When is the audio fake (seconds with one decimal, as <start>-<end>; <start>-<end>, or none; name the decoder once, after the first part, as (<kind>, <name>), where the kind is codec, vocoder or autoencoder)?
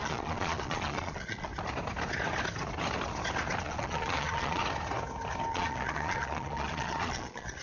0.0-1.5 (vocoder, Vocos); 3.6-4.6; 5.5-7.6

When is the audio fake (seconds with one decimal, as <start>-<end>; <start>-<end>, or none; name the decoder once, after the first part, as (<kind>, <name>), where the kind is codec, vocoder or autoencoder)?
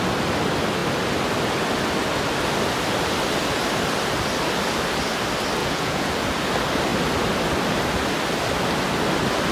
5.6-6.1 (vocoder, Vocos)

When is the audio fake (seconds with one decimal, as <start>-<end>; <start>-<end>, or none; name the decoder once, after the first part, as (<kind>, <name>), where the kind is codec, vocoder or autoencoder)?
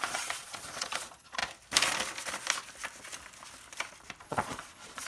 0.0-1.4 (vocoder, Vocos); 4.2-5.1